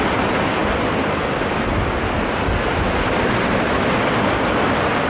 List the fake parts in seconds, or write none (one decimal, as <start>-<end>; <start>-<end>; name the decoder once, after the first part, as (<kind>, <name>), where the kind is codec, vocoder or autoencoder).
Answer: none